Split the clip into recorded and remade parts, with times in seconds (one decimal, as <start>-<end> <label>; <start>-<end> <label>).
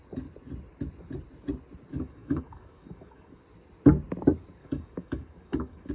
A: 0.0-1.9 recorded; 1.9-3.4 remade; 3.4-4.6 recorded; 4.6-5.9 remade